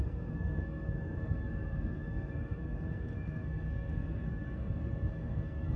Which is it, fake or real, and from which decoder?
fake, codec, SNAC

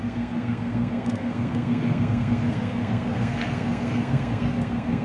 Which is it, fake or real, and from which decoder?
fake, codec, SNAC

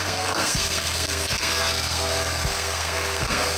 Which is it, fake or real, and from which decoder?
fake, codec, SNAC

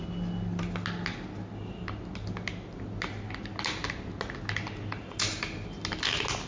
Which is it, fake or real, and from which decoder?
real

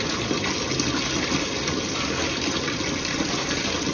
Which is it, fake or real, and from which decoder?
real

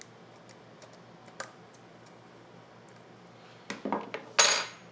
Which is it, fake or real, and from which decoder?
real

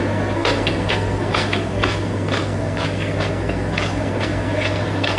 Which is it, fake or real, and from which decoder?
fake, codec, SNAC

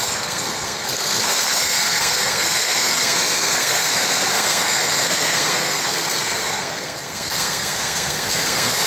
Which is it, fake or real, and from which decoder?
fake, codec, SNAC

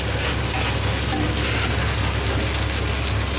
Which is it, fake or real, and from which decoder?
real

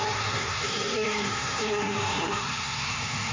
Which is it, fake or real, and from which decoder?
fake, codec, SNAC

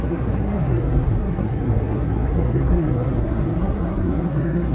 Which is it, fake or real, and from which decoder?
fake, codec, SNAC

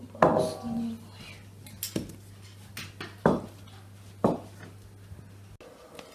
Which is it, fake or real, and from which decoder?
real